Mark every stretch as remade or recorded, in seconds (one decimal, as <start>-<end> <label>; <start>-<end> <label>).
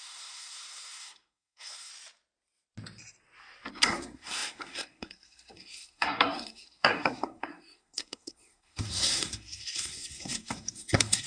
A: 0.0-1.9 remade; 1.9-3.7 recorded; 3.7-11.3 remade